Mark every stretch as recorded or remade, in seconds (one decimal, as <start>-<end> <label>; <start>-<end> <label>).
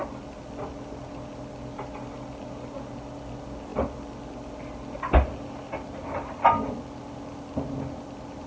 0.0-8.5 recorded